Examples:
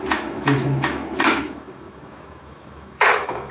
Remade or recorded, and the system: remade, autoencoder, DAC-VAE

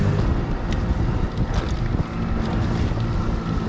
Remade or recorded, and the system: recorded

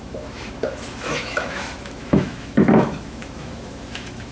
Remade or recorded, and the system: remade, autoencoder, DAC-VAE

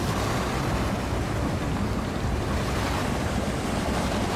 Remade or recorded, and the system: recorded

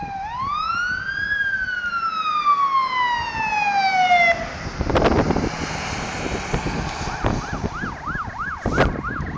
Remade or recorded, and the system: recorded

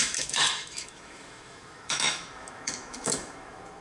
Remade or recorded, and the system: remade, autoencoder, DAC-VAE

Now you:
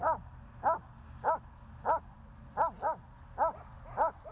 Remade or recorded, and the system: recorded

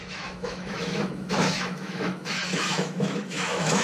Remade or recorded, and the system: remade, autoencoder, DAC-VAE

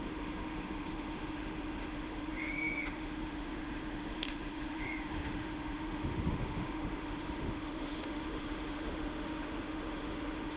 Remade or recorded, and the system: remade, autoencoder, DAC-VAE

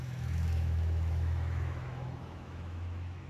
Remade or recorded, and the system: remade, autoencoder, DAC-VAE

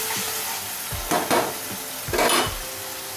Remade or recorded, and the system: recorded